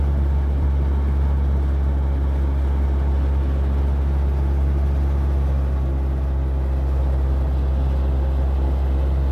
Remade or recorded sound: recorded